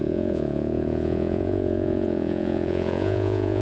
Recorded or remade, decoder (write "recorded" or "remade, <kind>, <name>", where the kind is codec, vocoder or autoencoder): remade, vocoder, Vocos